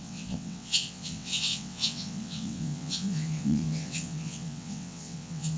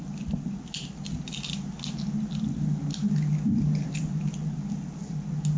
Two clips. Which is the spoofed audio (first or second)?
first